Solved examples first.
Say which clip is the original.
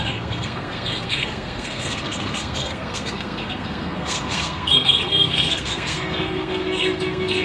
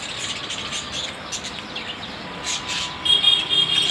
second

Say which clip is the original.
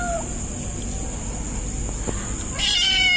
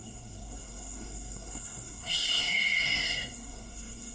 first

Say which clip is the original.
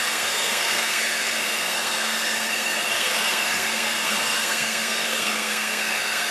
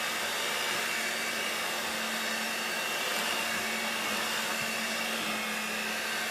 second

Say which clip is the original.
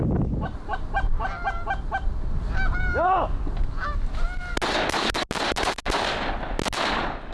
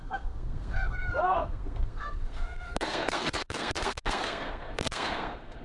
first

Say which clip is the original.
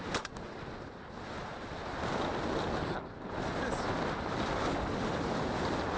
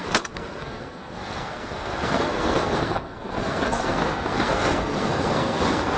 first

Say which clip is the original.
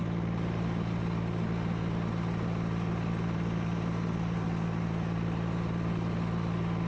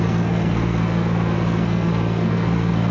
first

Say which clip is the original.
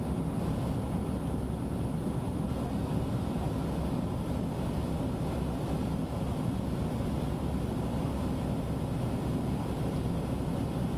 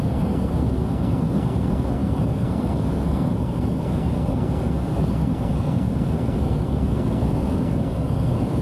first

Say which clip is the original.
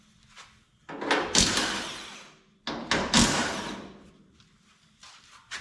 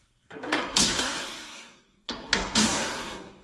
first